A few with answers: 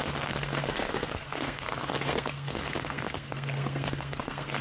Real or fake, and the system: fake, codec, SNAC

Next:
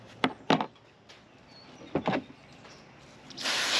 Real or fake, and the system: real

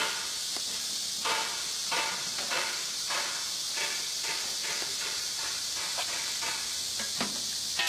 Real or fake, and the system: real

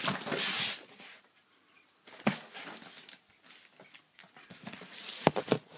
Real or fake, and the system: real